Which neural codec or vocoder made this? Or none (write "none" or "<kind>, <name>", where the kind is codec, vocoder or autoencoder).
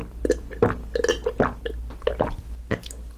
none